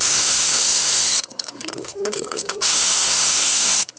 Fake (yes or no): yes